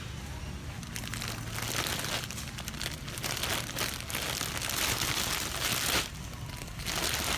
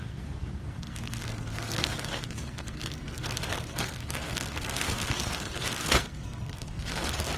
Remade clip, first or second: second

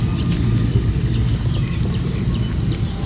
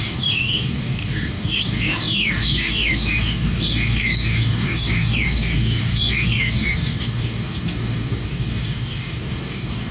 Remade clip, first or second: second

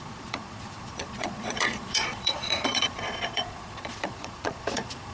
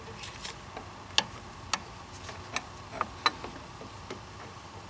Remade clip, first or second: first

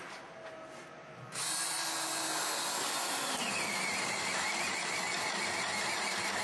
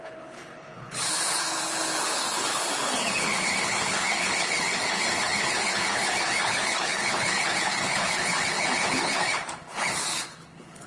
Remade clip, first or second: second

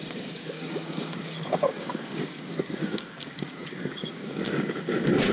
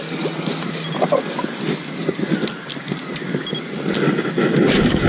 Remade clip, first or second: first